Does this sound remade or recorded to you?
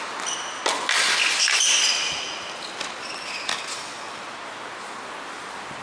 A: recorded